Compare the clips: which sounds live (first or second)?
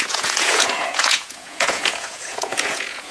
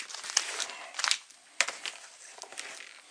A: second